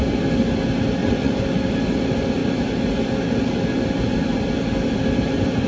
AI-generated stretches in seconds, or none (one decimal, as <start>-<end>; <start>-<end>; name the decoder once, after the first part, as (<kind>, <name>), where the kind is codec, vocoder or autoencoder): 1.0-1.5 (vocoder, Vocos)